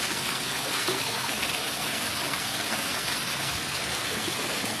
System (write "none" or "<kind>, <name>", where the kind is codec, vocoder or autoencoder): codec, SNAC